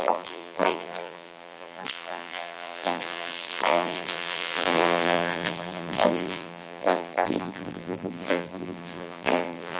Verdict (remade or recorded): remade